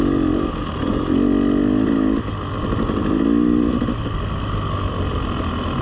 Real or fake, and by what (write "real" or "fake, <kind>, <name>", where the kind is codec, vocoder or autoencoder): real